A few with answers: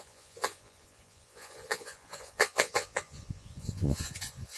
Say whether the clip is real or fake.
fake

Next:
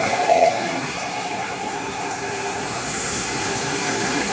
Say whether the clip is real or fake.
fake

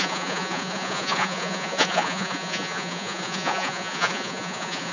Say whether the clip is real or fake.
fake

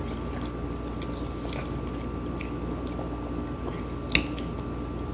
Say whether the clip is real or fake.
real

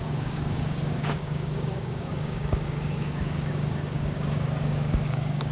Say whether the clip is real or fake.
fake